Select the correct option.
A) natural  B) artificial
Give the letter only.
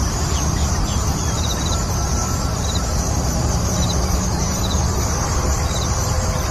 B